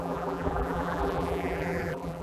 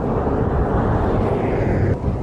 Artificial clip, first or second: first